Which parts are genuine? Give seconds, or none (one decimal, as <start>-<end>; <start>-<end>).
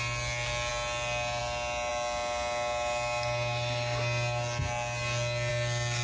0.0-6.0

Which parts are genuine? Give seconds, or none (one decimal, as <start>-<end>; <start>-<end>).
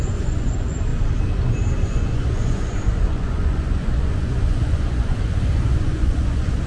0.9-1.8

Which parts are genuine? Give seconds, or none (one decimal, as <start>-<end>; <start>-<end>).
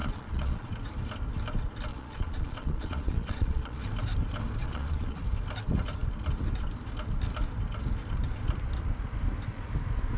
0.7-1.9; 3.8-4.6; 5.2-10.2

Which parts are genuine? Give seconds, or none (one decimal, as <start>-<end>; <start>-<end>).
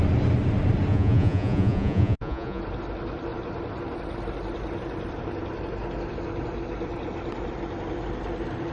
0.0-0.9; 2.6-8.7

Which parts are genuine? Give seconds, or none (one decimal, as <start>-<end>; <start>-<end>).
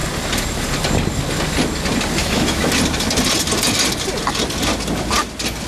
0.0-2.2; 2.7-5.7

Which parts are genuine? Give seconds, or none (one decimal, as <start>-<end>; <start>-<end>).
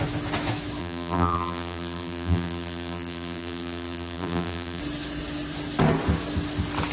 0.0-0.8; 4.8-6.9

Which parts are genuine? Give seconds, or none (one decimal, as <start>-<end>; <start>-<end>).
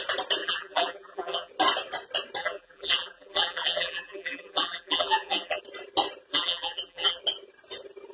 0.0-0.4; 1.5-2.4; 5.6-6.3; 7.2-8.1